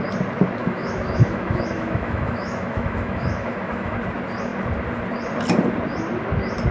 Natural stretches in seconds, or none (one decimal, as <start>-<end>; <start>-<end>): 0.0-0.6; 4.0-6.7

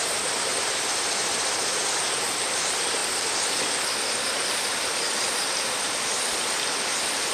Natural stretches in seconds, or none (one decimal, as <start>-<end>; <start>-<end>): 0.0-0.5; 1.8-3.0

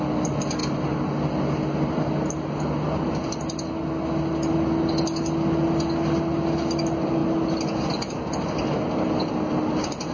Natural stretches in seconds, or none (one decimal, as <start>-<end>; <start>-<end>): 0.0-10.1

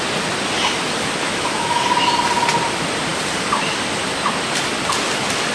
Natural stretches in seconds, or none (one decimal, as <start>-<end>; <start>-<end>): 0.0-1.2; 1.8-5.5

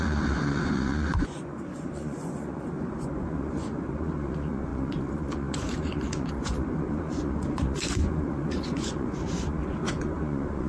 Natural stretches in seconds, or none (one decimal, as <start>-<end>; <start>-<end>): none

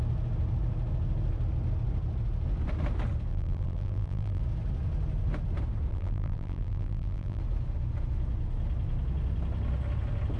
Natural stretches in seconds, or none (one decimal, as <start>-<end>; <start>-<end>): 0.0-3.3; 4.4-5.9; 7.4-10.4

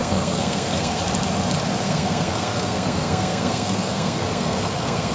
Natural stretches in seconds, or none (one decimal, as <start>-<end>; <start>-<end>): 1.0-1.7

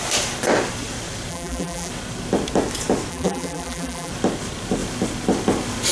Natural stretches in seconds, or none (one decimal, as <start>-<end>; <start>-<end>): 0.0-1.3; 1.9-3.1; 4.1-5.9